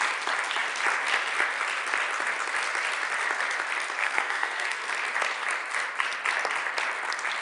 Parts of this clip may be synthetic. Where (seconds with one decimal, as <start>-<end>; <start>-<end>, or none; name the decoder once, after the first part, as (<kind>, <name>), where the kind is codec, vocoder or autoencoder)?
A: 4.0-4.9 (codec, SNAC)